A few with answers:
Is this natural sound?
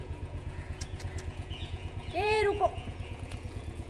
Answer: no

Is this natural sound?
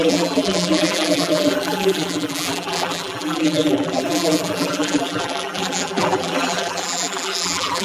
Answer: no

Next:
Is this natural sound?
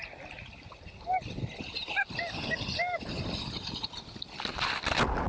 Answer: yes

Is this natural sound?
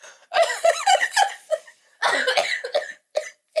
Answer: no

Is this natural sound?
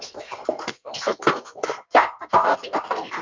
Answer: no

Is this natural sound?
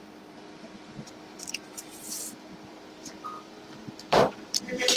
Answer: no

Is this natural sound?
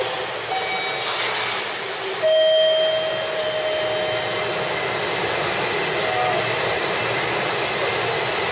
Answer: yes